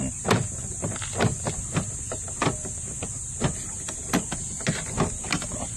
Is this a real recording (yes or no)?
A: yes